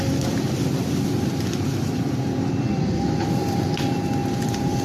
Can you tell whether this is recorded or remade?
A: remade